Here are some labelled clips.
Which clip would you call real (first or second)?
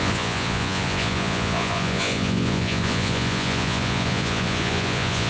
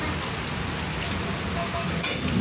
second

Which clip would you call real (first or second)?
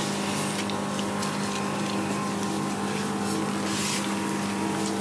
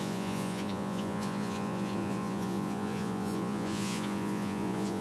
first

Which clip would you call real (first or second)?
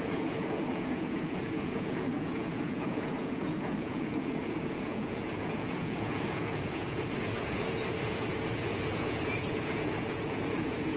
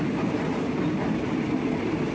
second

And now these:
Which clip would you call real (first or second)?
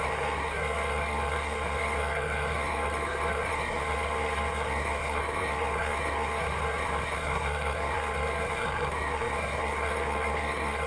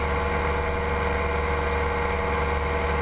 second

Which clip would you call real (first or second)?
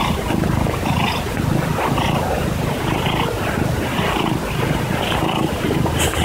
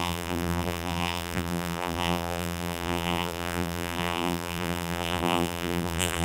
first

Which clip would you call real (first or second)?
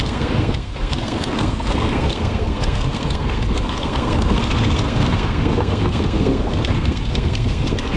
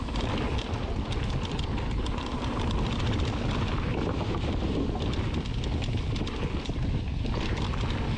second